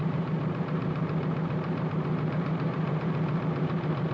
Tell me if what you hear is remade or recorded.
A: remade